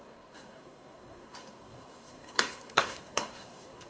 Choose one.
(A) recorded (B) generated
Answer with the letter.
B